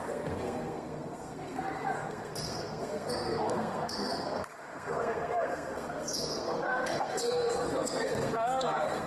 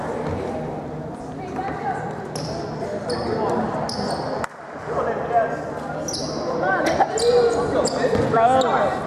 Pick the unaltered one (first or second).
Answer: second